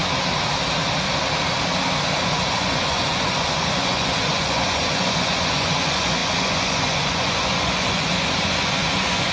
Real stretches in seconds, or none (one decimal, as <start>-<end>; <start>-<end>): 0.0-2.2